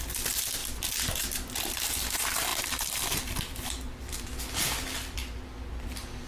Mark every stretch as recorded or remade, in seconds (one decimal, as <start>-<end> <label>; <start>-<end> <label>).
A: 0.0-0.6 remade; 0.6-1.6 recorded; 1.6-5.2 remade; 5.2-5.7 recorded; 5.7-6.3 remade